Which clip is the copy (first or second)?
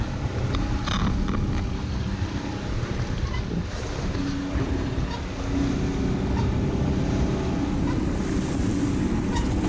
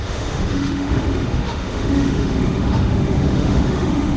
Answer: second